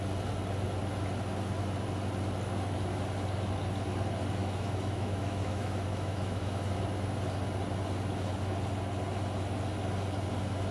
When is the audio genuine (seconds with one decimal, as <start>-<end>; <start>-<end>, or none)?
0.0-4.4; 6.7-10.7